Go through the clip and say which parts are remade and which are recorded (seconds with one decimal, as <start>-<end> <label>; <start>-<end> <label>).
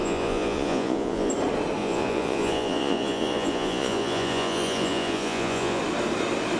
0.0-1.3 remade; 1.3-1.8 recorded; 1.8-5.8 remade; 5.8-6.6 recorded